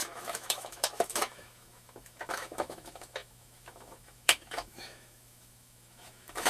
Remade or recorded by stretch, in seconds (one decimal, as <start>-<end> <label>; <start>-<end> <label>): 0.0-6.5 remade